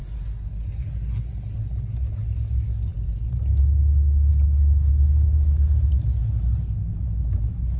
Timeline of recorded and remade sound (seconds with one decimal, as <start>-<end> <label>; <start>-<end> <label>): 0.0-7.8 recorded